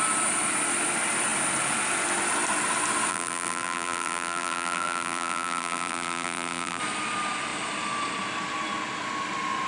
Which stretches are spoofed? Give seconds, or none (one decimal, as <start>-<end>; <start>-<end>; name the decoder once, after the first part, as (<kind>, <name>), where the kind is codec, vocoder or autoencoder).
3.1-6.8 (vocoder, BigVGAN v2)